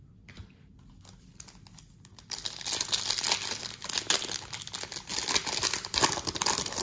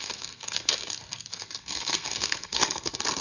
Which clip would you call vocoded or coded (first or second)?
second